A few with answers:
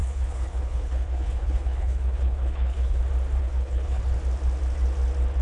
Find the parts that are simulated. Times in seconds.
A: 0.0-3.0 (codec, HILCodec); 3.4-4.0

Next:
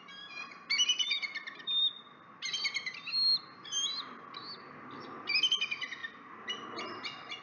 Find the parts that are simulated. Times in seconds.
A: none

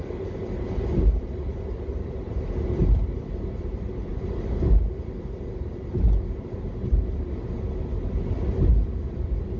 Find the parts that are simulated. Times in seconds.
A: none

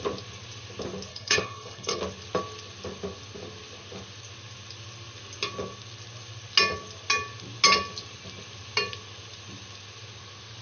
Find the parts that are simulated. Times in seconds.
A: 1.1-2.0 (codec, HILCodec)

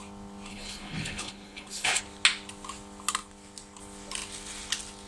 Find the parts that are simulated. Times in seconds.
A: 0.5-2.0 (codec, HILCodec)

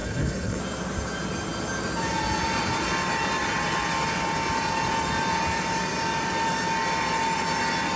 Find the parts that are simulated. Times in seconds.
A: 0.0-0.6 (codec, HILCodec)